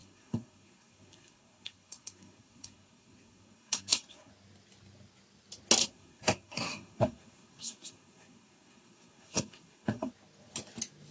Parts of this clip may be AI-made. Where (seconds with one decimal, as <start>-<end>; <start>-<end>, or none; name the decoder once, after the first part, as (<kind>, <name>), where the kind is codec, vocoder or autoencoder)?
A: 0.0-4.3 (codec, SNAC); 5.8-10.1